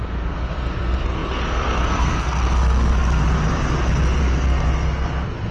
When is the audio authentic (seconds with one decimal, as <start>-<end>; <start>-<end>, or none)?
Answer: 3.2-4.2